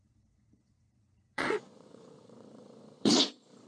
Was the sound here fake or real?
fake